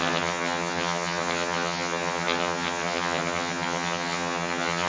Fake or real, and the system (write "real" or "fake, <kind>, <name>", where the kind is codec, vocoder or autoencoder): fake, vocoder, HiFi-GAN